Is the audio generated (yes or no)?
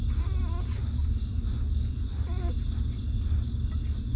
no